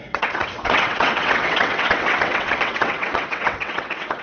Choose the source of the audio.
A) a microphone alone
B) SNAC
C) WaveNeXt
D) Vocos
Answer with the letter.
C